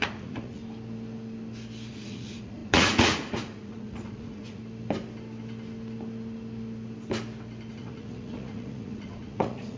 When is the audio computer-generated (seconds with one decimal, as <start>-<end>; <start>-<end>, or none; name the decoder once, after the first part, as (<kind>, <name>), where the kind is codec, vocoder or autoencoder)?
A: 0.0-0.6 (vocoder, Vocos); 1.9-4.6; 7.7-9.8